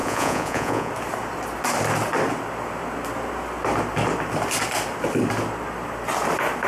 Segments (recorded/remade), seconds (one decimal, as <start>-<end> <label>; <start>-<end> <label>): 0.0-0.9 remade; 0.9-6.7 recorded